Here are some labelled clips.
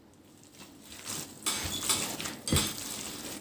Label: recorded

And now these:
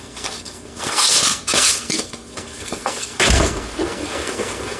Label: remade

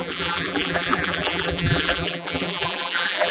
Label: remade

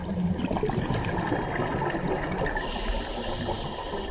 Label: recorded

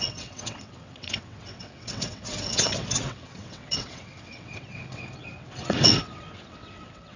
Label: remade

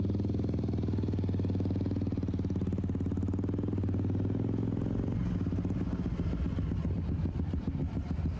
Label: recorded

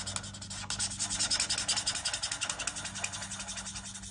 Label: recorded